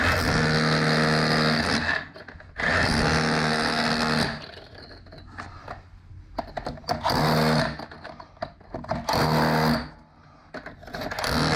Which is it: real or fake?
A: real